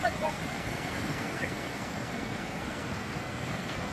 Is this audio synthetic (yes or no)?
yes